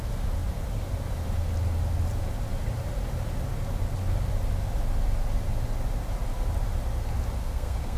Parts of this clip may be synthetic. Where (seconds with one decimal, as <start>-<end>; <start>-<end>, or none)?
7.4-8.0